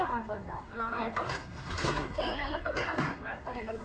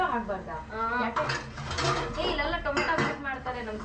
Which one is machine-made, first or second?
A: first